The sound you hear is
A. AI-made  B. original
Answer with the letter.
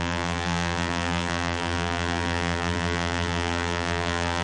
A